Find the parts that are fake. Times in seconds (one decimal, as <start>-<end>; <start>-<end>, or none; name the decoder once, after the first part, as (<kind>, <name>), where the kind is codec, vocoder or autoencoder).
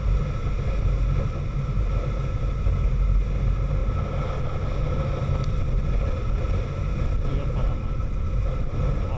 none